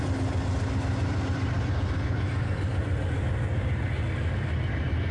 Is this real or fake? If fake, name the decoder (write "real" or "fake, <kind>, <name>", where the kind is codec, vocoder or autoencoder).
real